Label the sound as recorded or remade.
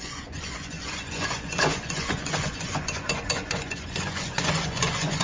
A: remade